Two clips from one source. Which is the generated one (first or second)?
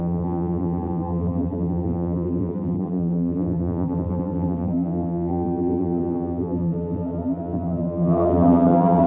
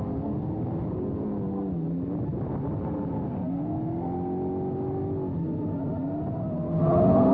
first